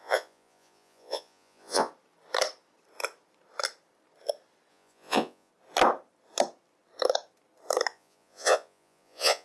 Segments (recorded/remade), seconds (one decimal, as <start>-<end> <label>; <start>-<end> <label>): 0.0-1.9 remade; 1.9-4.7 recorded; 4.7-5.5 remade; 5.5-7.9 recorded; 7.9-9.4 remade